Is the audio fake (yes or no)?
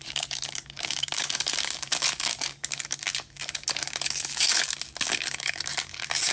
yes